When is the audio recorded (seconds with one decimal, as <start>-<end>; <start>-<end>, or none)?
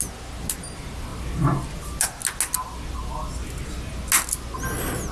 0.0-5.1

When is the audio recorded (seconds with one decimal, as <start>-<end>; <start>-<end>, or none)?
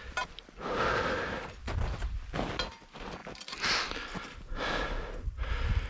0.0-5.9